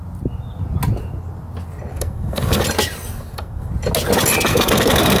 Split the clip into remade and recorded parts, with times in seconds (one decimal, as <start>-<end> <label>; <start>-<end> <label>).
0.0-1.9 recorded; 1.9-2.6 remade; 2.6-3.1 recorded; 3.1-3.7 remade; 3.7-4.5 recorded; 4.5-5.2 remade